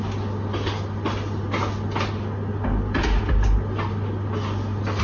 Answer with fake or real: real